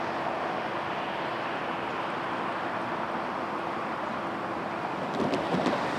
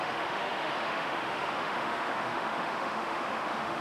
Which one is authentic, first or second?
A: first